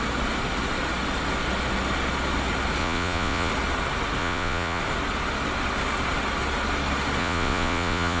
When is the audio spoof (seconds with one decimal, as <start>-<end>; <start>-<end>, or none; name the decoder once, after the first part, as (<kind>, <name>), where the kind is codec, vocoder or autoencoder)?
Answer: 2.8-3.5 (vocoder, Vocos); 4.2-4.8; 7.2-8.2